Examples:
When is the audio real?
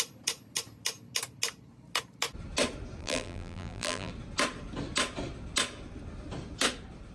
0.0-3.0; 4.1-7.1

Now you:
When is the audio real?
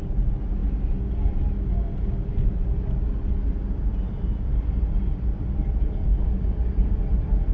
0.0-3.9; 5.1-6.1